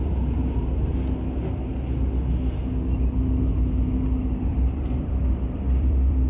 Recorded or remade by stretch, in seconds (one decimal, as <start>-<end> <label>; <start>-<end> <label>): 0.0-0.9 remade; 0.9-4.5 recorded; 4.5-6.3 remade

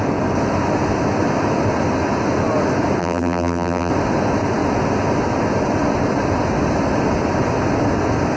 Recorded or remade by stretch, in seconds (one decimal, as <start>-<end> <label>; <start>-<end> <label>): 0.0-3.0 recorded; 3.0-3.9 remade; 3.9-8.4 recorded

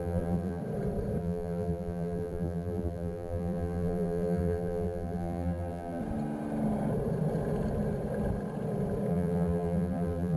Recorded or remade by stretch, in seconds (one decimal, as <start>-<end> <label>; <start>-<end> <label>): 0.0-0.6 remade; 0.6-1.2 recorded; 1.2-6.0 remade; 6.0-9.1 recorded; 9.1-10.4 remade

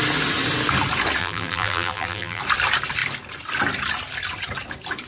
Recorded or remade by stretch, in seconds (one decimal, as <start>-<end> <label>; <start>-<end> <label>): 0.0-1.2 recorded; 1.2-2.4 remade; 2.4-5.1 recorded

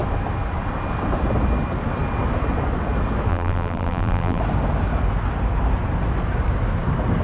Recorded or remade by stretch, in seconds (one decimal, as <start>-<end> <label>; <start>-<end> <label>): 0.0-3.3 recorded; 3.3-4.4 remade; 4.4-7.2 recorded

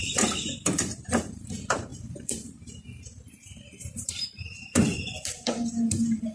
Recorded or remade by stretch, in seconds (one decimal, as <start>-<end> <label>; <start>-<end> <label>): 0.0-6.3 remade

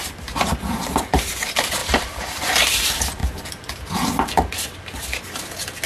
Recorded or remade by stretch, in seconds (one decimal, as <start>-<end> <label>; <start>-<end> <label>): 0.0-3.2 remade; 3.2-5.9 recorded